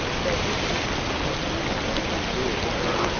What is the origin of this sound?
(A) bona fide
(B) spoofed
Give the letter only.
A